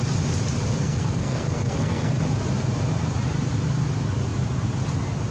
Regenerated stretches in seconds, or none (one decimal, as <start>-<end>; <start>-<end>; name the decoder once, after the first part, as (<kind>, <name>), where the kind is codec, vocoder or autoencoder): 0.8-2.1 (codec, SNAC)